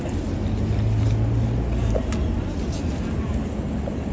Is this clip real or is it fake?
real